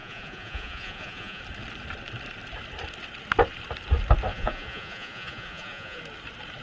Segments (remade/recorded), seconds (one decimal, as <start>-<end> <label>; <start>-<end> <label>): 0.0-1.4 remade; 1.4-4.3 recorded; 4.3-6.0 remade; 6.0-6.6 recorded